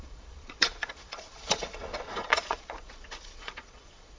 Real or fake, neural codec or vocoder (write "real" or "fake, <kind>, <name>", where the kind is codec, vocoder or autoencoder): fake, vocoder, Vocos